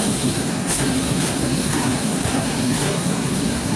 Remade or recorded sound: remade